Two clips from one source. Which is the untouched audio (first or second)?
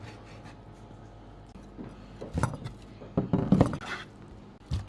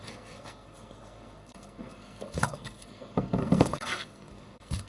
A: first